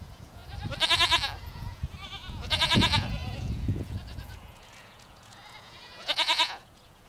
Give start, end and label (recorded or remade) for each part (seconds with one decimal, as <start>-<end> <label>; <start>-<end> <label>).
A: 0.0-0.4 remade; 0.4-1.4 recorded; 1.4-7.1 remade